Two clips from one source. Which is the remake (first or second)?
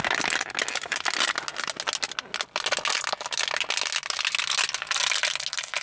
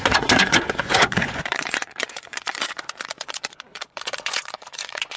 second